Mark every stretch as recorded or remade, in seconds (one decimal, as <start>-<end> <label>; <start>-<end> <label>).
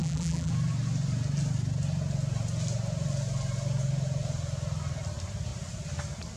0.0-0.5 remade; 0.5-6.4 recorded